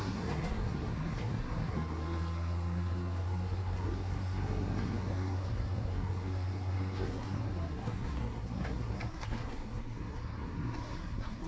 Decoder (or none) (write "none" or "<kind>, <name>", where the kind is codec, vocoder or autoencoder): codec, SNAC